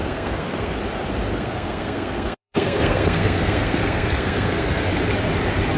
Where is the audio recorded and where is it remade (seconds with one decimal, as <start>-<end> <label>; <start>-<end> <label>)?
0.0-0.8 remade; 0.8-1.3 recorded; 1.3-4.8 remade; 4.8-5.8 recorded